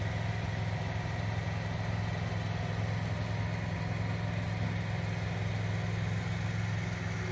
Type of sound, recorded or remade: recorded